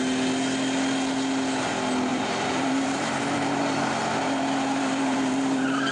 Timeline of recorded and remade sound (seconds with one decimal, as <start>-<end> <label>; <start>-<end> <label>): 0.0-2.1 recorded; 2.1-5.9 remade